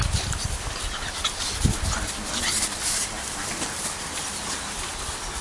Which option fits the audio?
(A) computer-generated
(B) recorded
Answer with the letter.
B